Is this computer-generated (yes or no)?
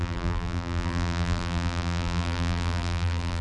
yes